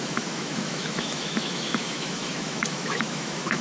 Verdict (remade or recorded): remade